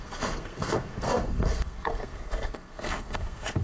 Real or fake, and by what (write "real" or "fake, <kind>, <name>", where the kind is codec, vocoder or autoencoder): fake, codec, SNAC